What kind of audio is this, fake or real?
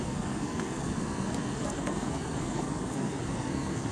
fake